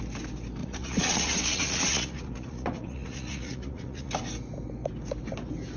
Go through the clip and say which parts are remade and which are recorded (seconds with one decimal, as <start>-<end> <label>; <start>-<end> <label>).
0.0-0.6 recorded; 0.6-4.1 remade; 4.1-5.8 recorded